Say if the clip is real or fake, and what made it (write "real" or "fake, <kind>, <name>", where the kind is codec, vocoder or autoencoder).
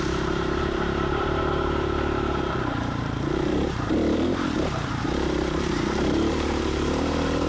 fake, vocoder, BigVGAN v2